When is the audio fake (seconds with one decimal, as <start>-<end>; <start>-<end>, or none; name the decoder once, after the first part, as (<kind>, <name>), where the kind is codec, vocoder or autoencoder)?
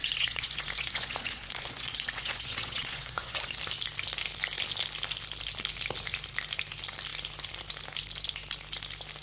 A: 0.0-3.6 (vocoder, Vocos)